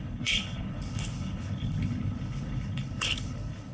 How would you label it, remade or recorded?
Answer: remade